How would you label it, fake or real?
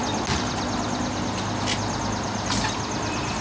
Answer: real